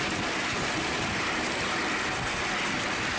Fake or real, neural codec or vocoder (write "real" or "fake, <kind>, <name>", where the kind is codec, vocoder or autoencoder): real